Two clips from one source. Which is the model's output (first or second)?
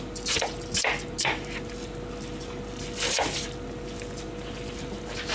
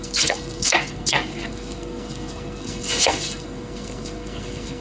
second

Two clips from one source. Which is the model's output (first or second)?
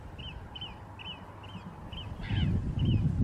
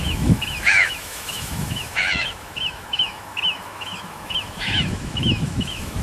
second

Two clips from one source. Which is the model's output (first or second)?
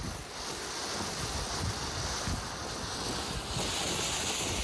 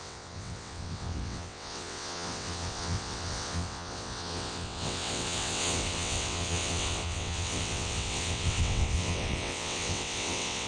second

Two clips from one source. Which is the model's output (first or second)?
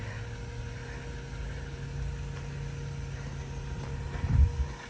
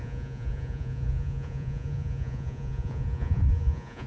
second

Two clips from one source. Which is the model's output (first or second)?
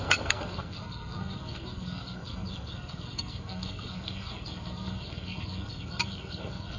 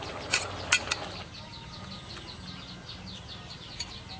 first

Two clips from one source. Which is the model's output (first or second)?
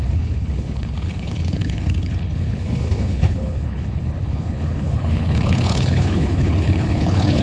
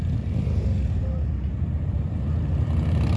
first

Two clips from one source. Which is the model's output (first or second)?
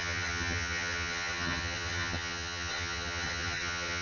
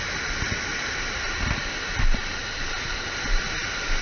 first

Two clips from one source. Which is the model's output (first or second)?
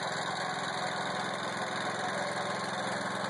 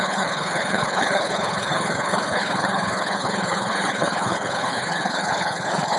second